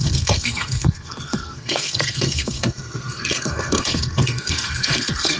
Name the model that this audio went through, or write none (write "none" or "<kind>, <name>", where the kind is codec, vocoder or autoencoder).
codec, SNAC